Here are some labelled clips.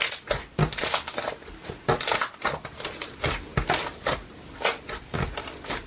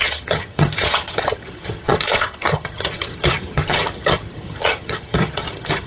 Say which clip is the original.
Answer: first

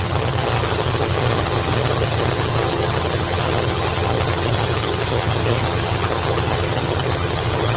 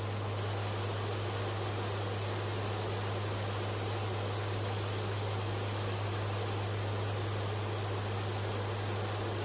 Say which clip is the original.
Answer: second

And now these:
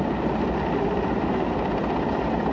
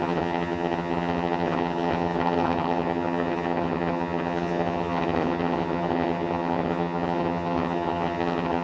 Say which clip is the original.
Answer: first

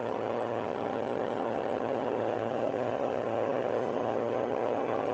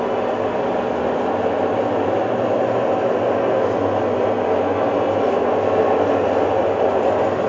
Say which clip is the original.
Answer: second